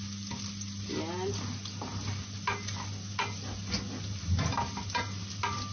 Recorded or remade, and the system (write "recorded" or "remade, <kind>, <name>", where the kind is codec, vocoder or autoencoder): recorded